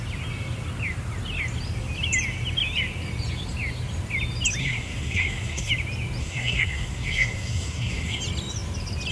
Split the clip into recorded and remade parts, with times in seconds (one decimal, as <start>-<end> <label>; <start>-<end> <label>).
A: 0.0-4.6 recorded; 4.6-5.7 remade; 5.7-6.2 recorded; 6.2-8.2 remade; 8.2-9.1 recorded